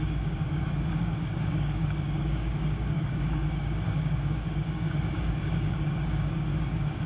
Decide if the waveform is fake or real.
fake